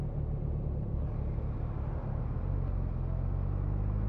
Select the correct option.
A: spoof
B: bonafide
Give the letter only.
B